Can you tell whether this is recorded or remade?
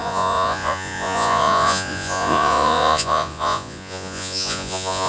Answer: remade